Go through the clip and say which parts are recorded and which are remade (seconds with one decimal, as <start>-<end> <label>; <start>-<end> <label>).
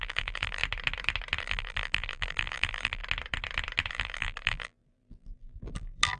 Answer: 0.0-0.6 remade; 0.6-1.4 recorded; 1.4-3.0 remade; 3.0-3.9 recorded; 3.9-6.2 remade